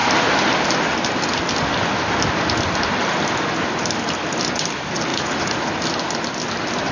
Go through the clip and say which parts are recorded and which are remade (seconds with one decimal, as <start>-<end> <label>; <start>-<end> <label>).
0.0-5.1 recorded; 5.1-5.7 remade; 5.7-6.9 recorded